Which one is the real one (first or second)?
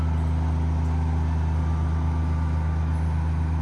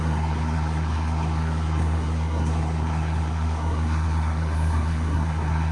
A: first